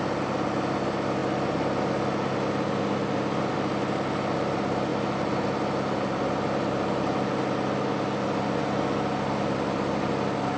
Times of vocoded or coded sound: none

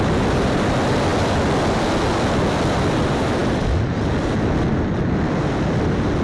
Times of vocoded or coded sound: none